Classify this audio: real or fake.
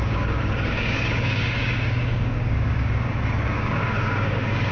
fake